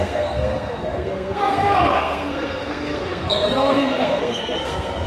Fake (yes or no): yes